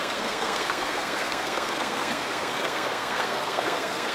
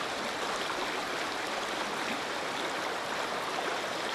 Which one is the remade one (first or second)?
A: first